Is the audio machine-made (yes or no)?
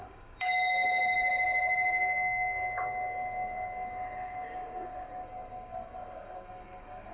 yes